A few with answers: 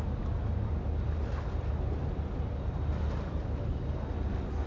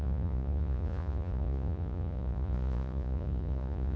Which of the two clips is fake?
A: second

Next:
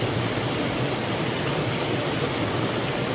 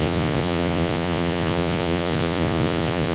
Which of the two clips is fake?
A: second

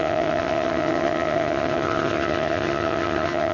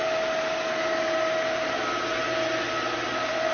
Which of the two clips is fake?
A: first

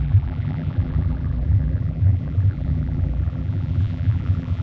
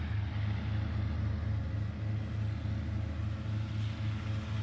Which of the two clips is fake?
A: first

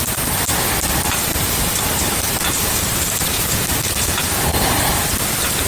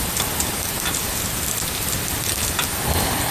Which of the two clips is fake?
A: first